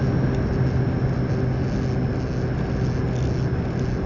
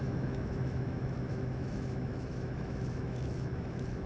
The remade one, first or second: second